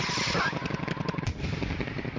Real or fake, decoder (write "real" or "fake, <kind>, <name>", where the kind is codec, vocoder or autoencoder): fake, vocoder, BigVGAN v2